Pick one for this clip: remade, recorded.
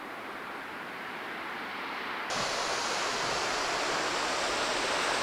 recorded